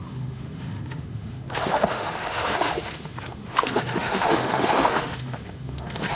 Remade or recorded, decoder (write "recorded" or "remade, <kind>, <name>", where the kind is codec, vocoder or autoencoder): remade, autoencoder, DAC-VAE